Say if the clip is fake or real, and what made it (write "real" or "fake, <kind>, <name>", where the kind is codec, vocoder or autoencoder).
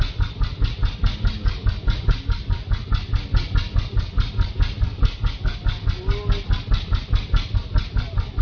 real